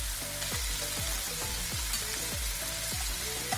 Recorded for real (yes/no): yes